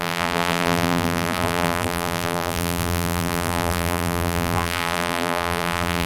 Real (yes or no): no